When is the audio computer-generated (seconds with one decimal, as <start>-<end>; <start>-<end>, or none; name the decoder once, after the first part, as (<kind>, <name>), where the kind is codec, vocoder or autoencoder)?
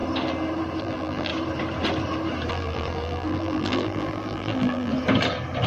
0.8-1.3 (vocoder, BigVGAN v2); 2.5-4.9